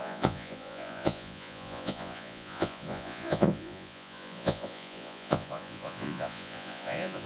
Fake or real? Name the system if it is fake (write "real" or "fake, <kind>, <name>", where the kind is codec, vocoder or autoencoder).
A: fake, vocoder, Vocos